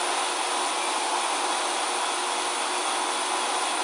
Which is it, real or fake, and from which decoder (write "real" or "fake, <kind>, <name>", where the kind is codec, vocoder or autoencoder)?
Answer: real